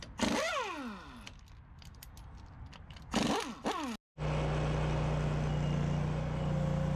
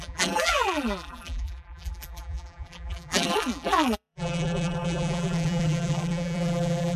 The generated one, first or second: second